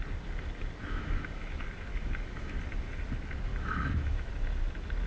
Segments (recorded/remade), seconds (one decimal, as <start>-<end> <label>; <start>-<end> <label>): 0.0-0.8 recorded; 0.8-1.5 remade; 1.5-1.9 recorded; 1.9-2.6 remade; 2.6-3.5 recorded; 3.5-4.3 remade; 4.3-5.1 recorded